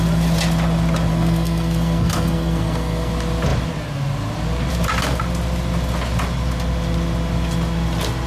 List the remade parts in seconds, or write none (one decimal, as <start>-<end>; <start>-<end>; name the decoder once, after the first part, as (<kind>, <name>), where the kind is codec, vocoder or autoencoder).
1.1-3.1 (codec, SNAC)